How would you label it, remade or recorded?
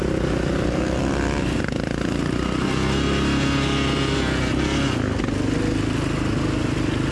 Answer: recorded